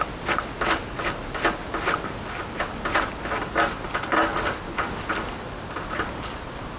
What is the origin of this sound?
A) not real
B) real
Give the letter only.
B